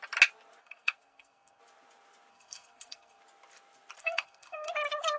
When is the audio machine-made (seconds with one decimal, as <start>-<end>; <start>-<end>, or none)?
0.6-1.6; 2.3-3.2; 4.0-4.7